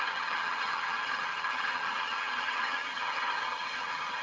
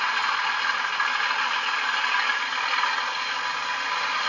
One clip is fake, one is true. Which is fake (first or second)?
first